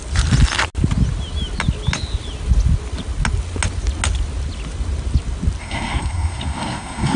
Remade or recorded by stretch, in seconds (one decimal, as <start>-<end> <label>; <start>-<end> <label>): 0.0-5.6 recorded; 5.6-7.2 remade